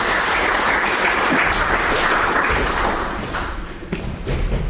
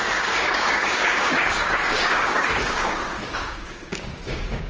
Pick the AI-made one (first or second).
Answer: second